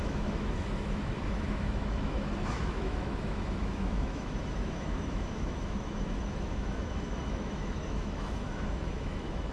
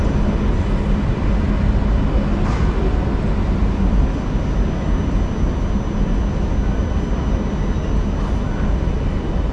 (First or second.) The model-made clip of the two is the first